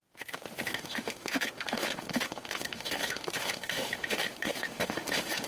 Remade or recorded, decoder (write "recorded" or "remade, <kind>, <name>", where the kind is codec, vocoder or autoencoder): remade, autoencoder, DAC-VAE